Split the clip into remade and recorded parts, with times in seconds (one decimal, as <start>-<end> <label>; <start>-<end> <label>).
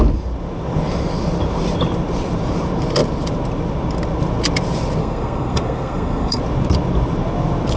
0.0-5.0 recorded; 5.0-6.4 remade; 6.4-7.8 recorded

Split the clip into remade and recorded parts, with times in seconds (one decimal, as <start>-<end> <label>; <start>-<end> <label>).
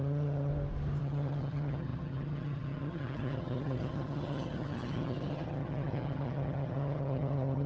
0.0-0.5 remade; 0.5-1.0 recorded; 1.0-7.7 remade